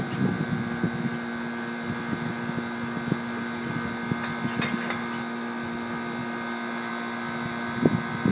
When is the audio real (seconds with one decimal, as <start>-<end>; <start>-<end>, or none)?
0.0-8.3